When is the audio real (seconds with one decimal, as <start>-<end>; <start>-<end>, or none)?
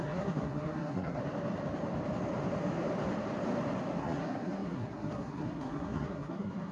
1.2-4.0